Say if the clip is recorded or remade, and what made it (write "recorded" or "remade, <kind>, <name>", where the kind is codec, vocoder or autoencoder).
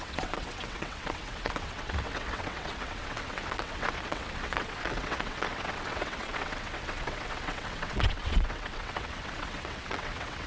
remade, vocoder, WaveNeXt